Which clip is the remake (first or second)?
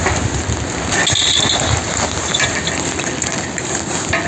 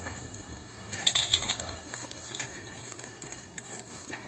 second